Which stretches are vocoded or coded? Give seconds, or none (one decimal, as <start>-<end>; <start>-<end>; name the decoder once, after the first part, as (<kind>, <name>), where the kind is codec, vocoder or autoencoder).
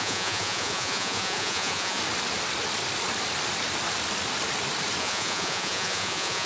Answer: 0.0-2.0 (vocoder, Vocos); 5.0-6.5